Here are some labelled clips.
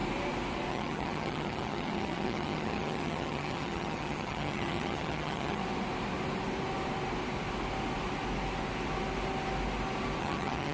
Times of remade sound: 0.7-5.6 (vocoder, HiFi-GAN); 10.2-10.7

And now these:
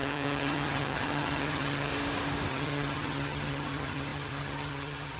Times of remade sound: 0.0-1.9 (vocoder, HiFi-GAN); 2.5-5.2

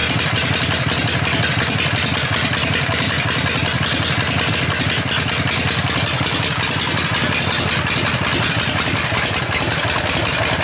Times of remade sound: none

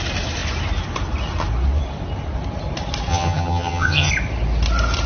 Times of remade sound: 3.1-4.1 (vocoder, HiFi-GAN)